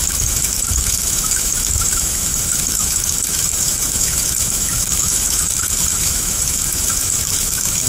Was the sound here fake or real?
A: fake